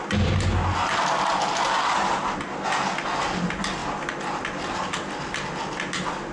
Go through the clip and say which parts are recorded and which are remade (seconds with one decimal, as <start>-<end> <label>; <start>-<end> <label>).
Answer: 0.0-6.3 recorded